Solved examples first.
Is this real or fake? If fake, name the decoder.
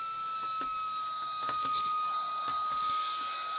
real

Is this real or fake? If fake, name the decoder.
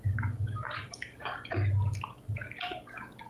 fake, codec, DAC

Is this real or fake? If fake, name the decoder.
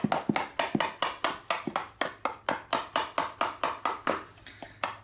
real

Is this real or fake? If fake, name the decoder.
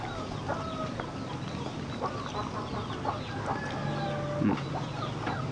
real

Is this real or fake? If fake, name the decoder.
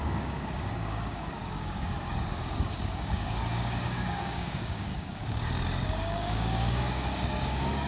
fake, codec, DAC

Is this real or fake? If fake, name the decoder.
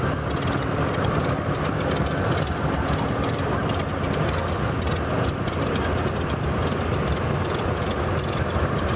real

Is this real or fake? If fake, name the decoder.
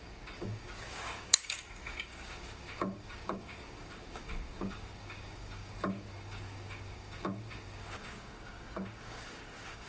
fake, codec, DAC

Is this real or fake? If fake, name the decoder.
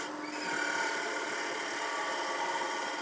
real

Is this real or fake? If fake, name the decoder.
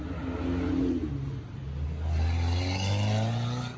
real